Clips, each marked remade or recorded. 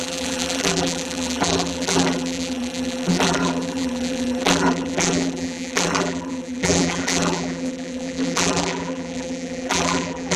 remade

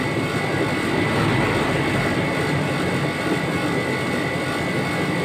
recorded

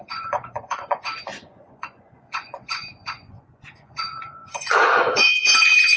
remade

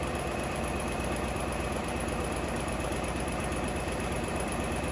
remade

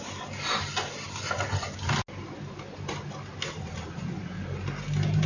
recorded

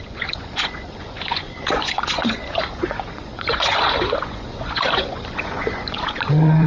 remade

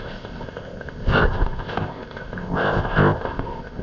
remade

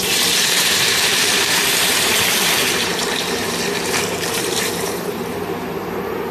remade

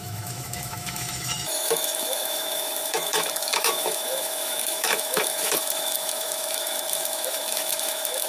remade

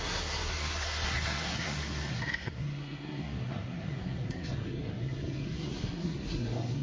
remade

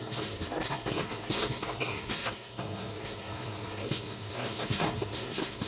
remade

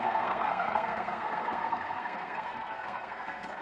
remade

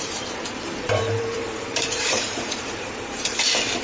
remade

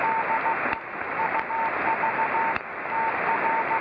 recorded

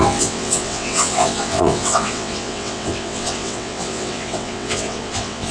remade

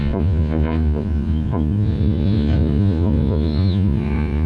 remade